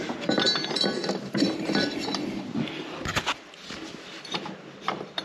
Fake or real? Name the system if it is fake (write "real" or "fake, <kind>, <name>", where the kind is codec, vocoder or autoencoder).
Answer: real